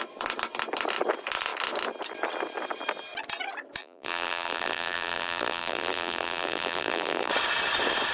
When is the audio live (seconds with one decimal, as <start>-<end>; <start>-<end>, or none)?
0.0-3.8; 7.3-8.1